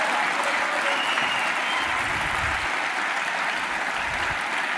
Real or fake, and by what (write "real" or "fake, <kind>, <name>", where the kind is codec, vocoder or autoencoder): real